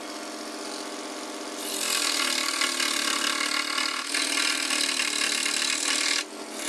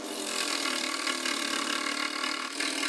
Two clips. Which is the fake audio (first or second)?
second